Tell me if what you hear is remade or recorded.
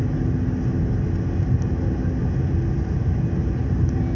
recorded